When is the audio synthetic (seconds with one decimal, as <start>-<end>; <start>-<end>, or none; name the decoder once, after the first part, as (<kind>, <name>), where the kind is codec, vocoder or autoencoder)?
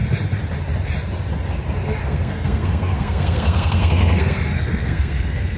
2.0-5.6 (codec, SNAC)